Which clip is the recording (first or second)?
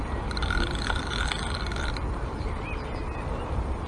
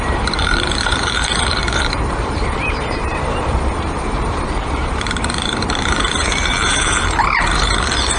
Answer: first